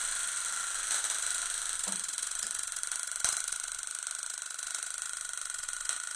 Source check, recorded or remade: recorded